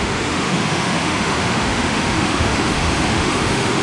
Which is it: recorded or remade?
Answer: remade